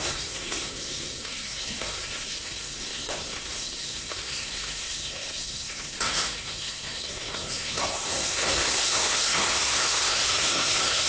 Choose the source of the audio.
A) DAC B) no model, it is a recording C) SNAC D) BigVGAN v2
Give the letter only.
C